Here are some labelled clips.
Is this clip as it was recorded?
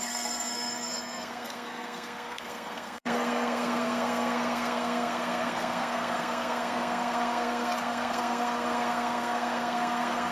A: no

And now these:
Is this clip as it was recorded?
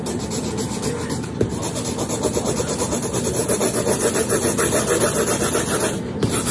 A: yes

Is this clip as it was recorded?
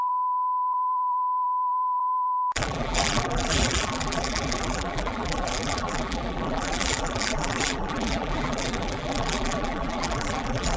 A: no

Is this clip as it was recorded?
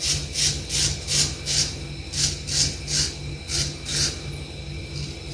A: yes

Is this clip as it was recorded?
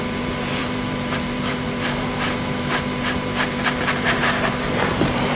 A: no